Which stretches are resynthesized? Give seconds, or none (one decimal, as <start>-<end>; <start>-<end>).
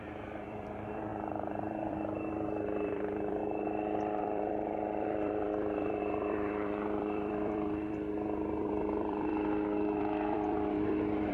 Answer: 0.0-3.4; 4.2-9.3; 10.0-11.3